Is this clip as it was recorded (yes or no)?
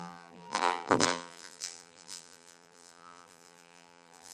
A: no